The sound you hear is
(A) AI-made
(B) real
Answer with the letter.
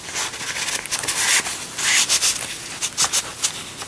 B